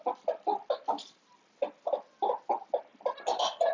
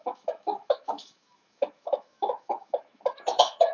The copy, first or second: second